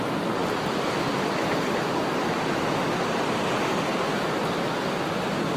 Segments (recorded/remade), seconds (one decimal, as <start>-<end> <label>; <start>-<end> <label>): 0.0-0.4 remade; 0.4-1.6 recorded; 1.6-5.6 remade